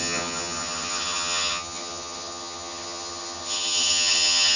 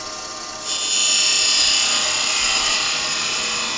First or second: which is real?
second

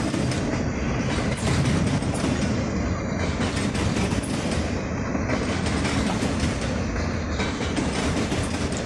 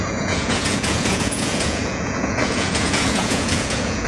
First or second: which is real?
first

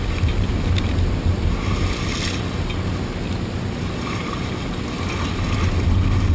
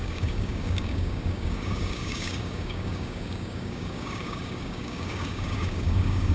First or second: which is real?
first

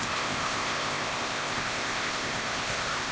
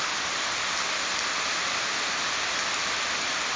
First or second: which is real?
second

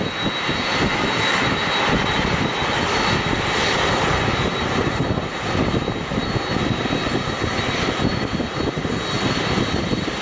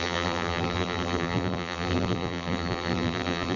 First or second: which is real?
first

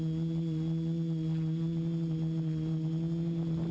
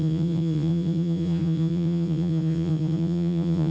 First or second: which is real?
first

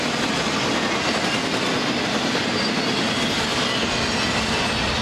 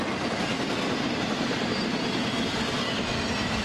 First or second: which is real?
first